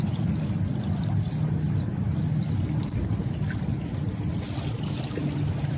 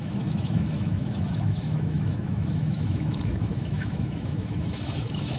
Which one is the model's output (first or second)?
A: second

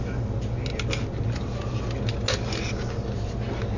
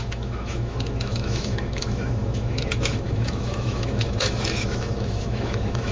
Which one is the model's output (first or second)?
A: second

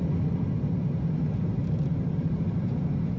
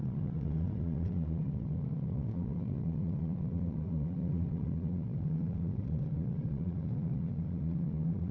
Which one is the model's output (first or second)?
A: second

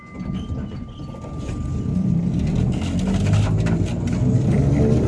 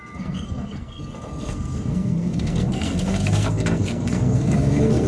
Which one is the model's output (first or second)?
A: second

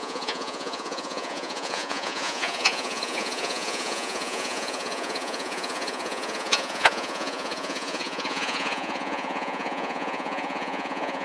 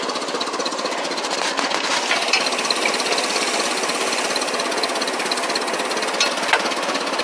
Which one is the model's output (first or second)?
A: first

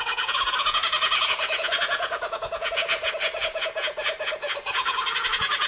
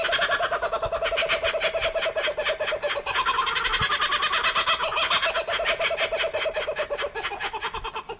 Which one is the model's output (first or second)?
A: first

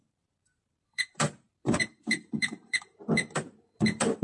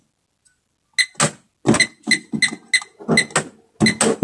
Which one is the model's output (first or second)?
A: first